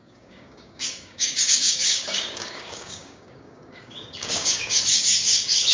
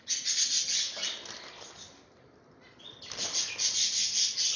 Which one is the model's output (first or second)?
first